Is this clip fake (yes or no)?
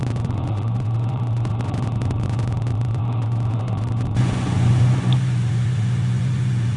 yes